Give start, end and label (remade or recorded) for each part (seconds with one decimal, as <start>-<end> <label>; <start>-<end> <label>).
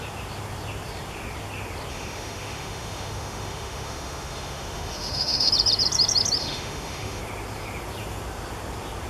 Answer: 0.0-1.9 recorded; 1.9-5.5 remade; 5.5-6.4 recorded; 6.4-7.2 remade; 7.2-9.1 recorded